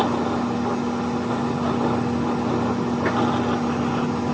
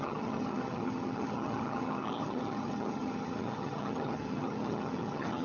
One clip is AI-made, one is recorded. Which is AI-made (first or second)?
second